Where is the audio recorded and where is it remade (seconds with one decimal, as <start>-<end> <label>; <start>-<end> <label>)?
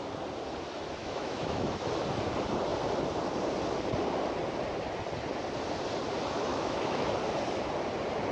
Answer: 0.0-1.0 recorded; 1.0-1.9 remade; 1.9-6.5 recorded; 6.5-7.1 remade; 7.1-8.3 recorded